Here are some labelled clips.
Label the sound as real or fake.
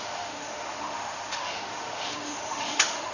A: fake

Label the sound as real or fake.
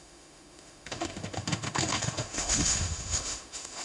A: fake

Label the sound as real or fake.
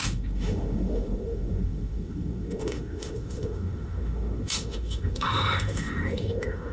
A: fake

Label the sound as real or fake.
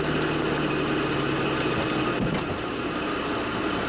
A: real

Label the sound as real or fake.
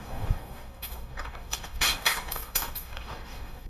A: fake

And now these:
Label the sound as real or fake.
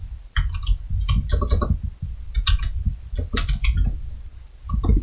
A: real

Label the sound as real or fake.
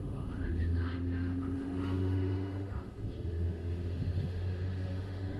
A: fake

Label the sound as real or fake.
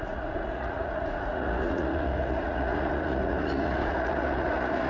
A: fake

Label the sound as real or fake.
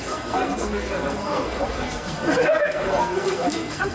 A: fake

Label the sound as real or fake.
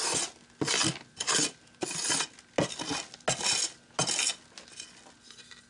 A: real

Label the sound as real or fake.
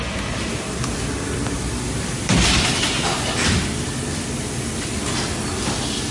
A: real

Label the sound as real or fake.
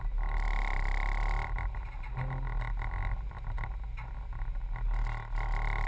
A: real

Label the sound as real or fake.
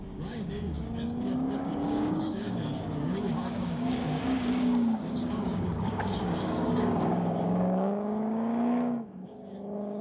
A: fake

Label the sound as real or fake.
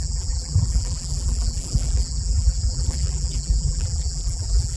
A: fake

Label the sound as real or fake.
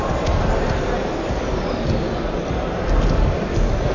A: real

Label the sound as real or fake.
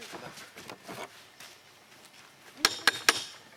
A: real